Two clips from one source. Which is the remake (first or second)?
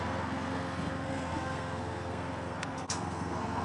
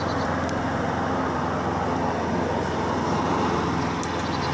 first